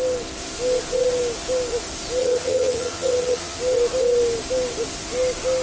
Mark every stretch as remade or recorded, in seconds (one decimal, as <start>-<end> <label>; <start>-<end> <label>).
0.0-2.2 recorded; 2.2-3.6 remade; 3.6-5.6 recorded